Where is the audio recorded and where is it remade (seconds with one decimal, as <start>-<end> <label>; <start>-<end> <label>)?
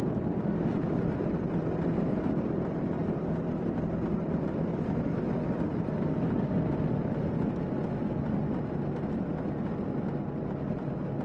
0.0-0.8 recorded; 0.8-2.6 remade; 2.6-3.0 recorded; 3.0-7.2 remade; 7.2-11.2 recorded